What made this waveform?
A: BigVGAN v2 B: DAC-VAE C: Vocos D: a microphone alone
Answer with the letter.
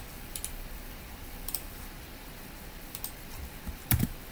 A